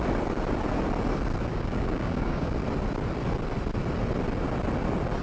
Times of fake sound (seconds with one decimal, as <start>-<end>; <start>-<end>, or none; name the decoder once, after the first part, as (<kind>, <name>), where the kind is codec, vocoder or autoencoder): 1.5-2.5 (codec, DAC)